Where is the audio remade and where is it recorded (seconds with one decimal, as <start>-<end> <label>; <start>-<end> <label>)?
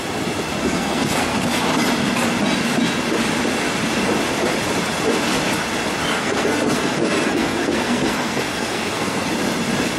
0.0-0.6 recorded; 0.6-1.6 remade; 1.6-6.1 recorded; 6.1-9.3 remade; 9.3-10.0 recorded